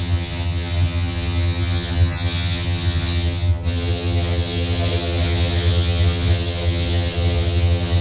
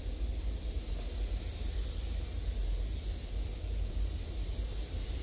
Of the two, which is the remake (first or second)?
first